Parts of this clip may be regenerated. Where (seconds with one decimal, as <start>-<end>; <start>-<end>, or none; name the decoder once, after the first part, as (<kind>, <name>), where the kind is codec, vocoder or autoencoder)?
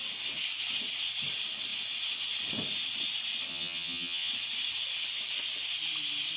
3.5-4.3 (vocoder, HiFi-GAN)